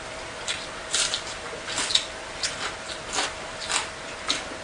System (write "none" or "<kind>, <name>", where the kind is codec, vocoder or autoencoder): vocoder, BigVGAN v2